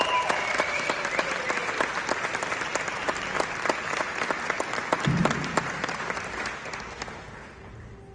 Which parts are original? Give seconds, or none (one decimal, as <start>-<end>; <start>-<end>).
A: 0.0-8.1